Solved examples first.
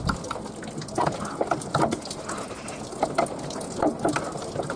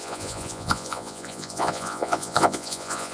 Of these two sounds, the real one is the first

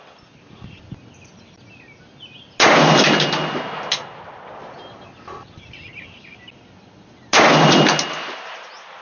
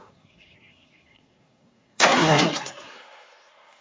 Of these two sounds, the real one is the first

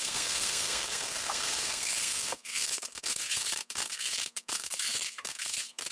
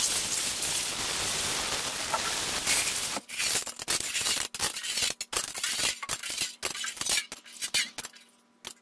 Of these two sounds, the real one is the second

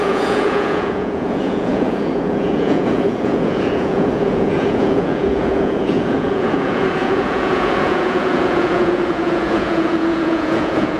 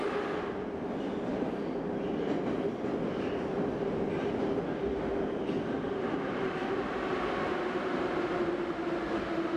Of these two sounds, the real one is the second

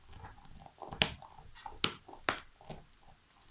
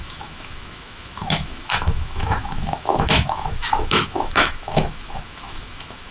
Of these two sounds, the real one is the first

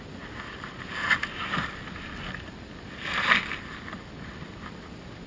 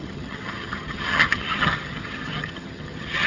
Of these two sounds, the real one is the first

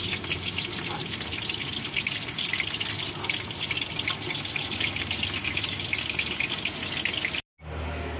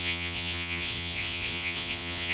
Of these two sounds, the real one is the first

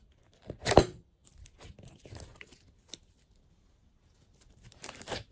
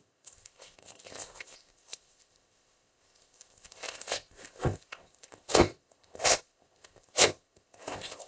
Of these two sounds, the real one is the first